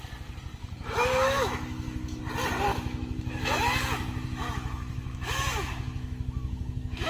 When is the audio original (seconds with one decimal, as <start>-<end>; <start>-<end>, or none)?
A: 0.0-0.6; 2.2-2.7